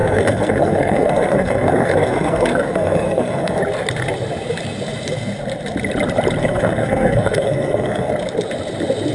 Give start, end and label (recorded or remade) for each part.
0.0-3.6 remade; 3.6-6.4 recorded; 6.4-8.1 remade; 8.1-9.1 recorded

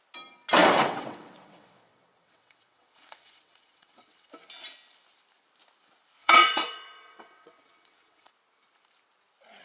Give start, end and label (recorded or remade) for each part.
0.0-0.6 recorded; 0.6-4.3 remade; 4.3-6.2 recorded; 6.2-8.3 remade; 8.3-9.6 recorded

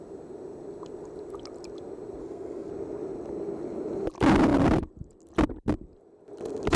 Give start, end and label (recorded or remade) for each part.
0.0-2.2 recorded; 2.2-2.7 remade; 2.7-6.8 recorded

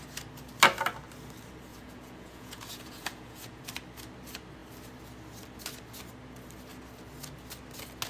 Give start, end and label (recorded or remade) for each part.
0.0-1.7 recorded; 1.7-3.6 remade; 3.6-8.1 recorded